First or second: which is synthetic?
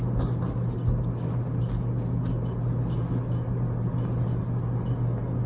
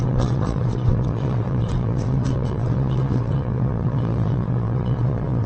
second